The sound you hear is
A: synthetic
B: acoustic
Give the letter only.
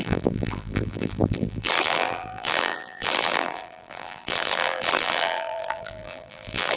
A